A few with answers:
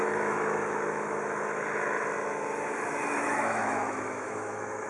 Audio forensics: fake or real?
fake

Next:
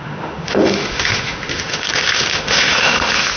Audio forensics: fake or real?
fake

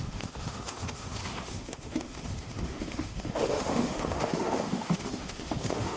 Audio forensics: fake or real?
fake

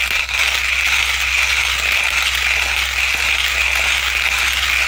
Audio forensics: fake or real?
real